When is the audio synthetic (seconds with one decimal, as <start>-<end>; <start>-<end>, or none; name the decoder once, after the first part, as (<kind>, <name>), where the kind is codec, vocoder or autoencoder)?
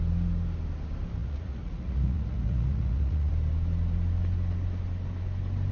1.2-3.3 (vocoder, Vocos)